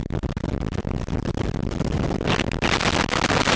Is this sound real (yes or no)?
yes